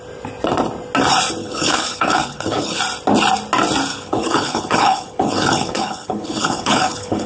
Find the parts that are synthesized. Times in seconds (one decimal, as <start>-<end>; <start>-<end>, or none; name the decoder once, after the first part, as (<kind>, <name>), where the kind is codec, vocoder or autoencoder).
1.4-2.8 (codec, HILCodec); 3.9-7.3